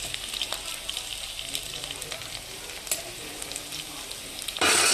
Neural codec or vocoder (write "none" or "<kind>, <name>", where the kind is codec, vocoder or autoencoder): none